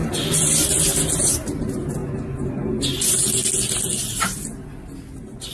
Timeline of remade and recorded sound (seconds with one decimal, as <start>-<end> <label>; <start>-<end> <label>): 0.0-1.1 remade; 1.1-5.5 recorded